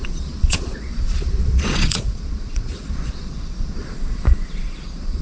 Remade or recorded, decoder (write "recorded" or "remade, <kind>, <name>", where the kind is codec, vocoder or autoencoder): remade, vocoder, Vocos